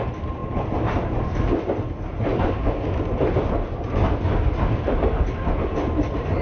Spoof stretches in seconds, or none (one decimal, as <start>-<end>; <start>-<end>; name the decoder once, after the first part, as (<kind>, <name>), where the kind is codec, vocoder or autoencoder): none